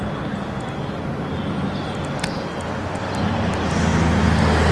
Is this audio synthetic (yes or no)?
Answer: no